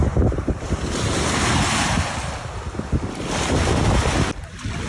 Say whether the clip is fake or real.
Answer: real